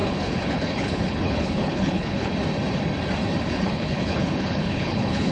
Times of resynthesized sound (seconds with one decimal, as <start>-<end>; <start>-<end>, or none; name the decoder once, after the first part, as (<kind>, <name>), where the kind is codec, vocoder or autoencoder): 0.0-2.3 (codec, HILCodec); 3.4-5.3